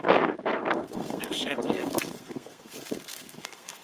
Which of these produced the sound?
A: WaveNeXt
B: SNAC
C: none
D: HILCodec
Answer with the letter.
B